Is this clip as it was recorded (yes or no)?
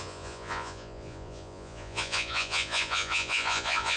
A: no